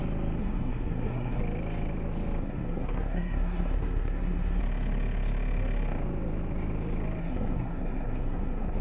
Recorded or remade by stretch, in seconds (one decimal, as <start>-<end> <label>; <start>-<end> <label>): 0.0-0.4 recorded; 0.4-1.4 remade; 1.4-2.4 recorded; 2.4-4.6 remade; 4.6-7.2 recorded; 7.2-8.8 remade